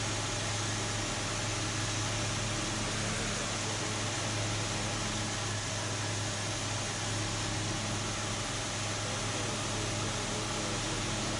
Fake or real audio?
real